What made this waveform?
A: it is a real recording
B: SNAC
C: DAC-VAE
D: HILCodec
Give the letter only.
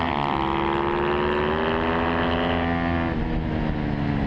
A